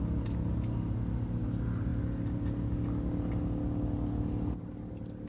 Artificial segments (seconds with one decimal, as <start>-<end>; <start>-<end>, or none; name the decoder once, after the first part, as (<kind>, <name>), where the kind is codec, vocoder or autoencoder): none